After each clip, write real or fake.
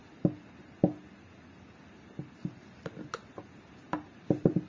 real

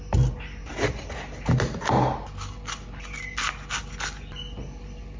real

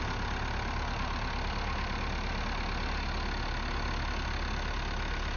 real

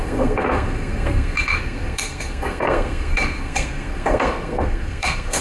fake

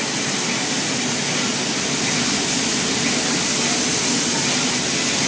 real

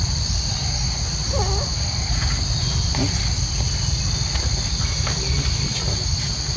real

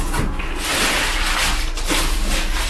real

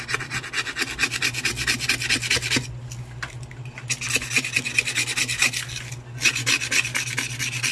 real